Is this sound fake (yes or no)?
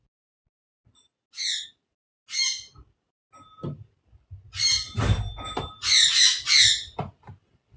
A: no